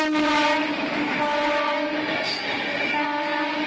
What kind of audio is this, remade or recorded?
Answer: recorded